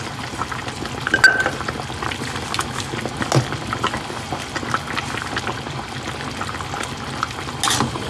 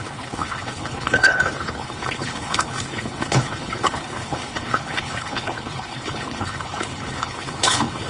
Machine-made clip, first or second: second